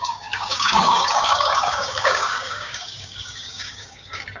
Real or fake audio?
fake